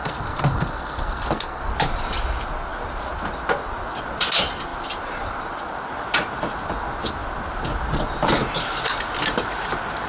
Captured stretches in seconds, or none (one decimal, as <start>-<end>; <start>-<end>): 1.7-10.1